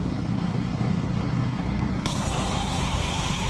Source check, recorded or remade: remade